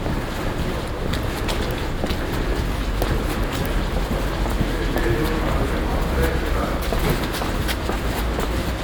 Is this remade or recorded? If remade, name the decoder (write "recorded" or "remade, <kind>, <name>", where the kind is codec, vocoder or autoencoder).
recorded